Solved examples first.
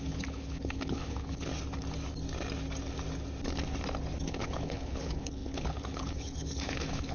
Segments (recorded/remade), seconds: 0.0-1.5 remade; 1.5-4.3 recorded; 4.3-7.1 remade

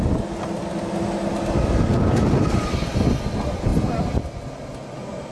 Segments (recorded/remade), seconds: 0.0-5.3 recorded

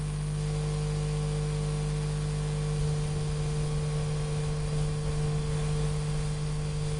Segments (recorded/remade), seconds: 0.0-2.8 recorded; 2.8-7.0 remade

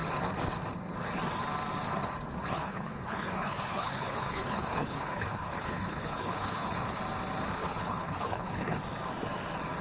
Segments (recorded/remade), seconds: 0.0-2.5 recorded; 2.5-7.0 remade; 7.0-7.6 recorded; 7.6-8.8 remade; 8.8-9.8 recorded

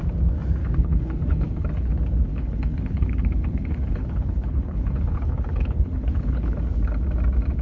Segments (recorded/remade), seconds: 0.0-0.6 recorded; 0.6-1.9 remade; 1.9-2.3 recorded; 2.3-6.6 remade; 6.6-7.6 recorded

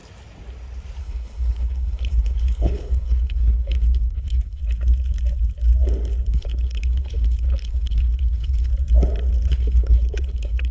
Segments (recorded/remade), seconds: 0.0-1.0 recorded; 1.0-4.6 remade; 4.6-6.3 recorded; 6.3-8.7 remade; 8.7-9.5 recorded; 9.5-10.7 remade

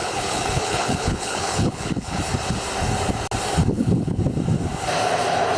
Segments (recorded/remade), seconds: 0.0-2.2 remade; 2.2-3.6 recorded; 3.6-4.2 remade; 4.2-5.6 recorded

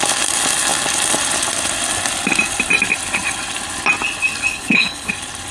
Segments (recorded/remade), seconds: 0.0-4.5 recorded; 4.5-5.1 remade; 5.1-5.5 recorded